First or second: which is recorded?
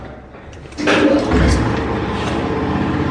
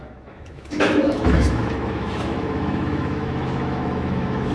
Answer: first